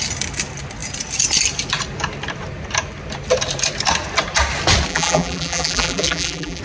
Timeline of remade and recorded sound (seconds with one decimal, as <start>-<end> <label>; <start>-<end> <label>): 0.0-4.9 recorded; 4.9-6.6 remade